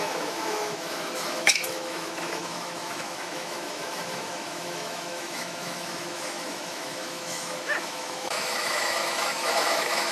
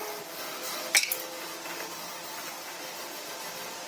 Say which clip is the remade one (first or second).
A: first